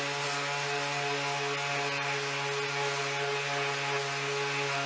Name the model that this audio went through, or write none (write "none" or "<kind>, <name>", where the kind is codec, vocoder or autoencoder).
none